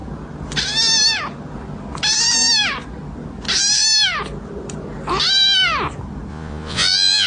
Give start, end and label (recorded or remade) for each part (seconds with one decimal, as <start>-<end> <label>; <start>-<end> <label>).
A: 0.0-6.3 recorded; 6.3-7.3 remade